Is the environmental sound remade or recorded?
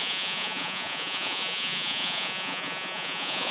remade